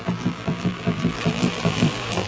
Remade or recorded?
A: remade